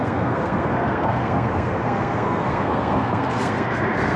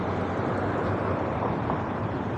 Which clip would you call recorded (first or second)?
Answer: second